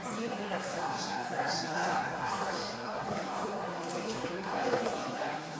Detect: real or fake fake